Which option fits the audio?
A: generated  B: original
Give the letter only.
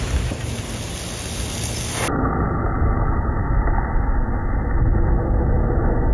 B